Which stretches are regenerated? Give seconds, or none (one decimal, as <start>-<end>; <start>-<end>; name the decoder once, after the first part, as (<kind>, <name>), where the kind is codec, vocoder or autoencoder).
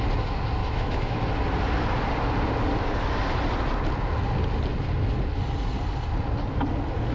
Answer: 0.6-1.2 (autoencoder, DAC-VAE)